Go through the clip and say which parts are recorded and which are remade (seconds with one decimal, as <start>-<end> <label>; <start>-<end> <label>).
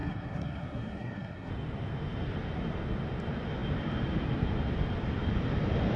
0.0-1.5 remade; 1.5-6.0 recorded